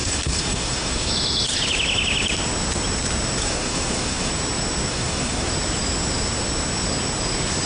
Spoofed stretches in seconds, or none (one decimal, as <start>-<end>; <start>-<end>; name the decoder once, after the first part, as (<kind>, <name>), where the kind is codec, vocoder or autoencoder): 0.0-1.1 (codec, SNAC); 3.4-4.3; 4.9-5.5